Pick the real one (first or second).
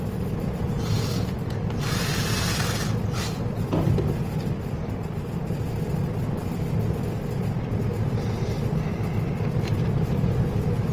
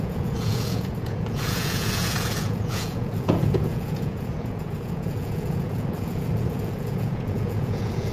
first